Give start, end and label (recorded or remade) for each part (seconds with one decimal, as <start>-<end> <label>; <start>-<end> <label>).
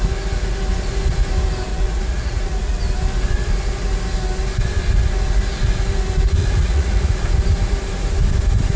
0.0-1.7 recorded; 1.7-2.8 remade; 2.8-6.4 recorded; 6.4-7.2 remade; 7.2-8.8 recorded